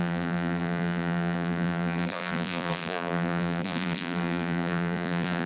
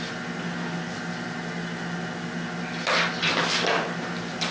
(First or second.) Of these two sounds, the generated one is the first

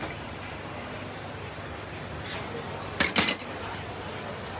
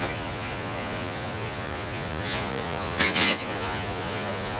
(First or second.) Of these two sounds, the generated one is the second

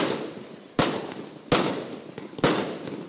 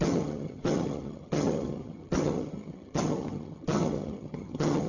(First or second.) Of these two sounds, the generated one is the second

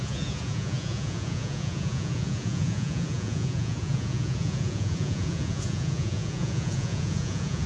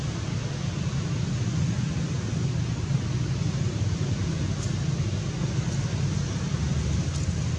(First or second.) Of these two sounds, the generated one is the first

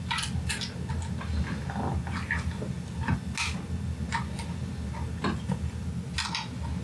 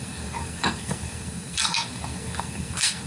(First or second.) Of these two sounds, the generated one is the second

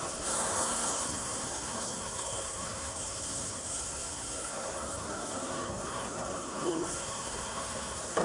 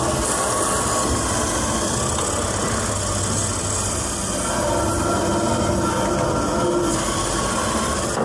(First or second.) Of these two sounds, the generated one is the first